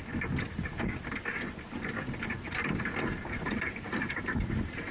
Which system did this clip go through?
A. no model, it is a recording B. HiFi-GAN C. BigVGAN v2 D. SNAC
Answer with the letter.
A